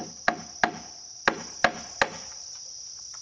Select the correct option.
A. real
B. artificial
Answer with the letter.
A